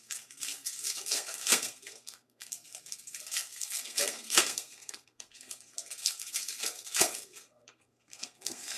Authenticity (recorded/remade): remade